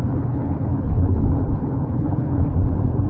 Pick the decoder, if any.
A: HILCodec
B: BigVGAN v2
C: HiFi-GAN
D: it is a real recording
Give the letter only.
A